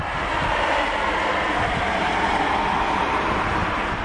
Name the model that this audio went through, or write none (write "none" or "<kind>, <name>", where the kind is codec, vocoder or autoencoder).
none